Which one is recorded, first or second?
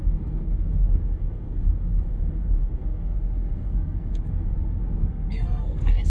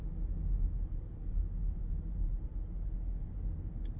second